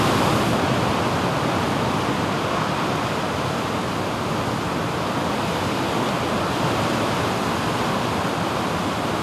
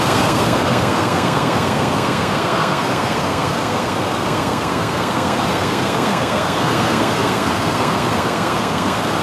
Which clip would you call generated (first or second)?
second